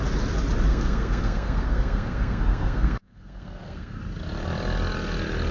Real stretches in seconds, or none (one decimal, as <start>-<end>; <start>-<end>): 0.0-0.7; 4.0-5.5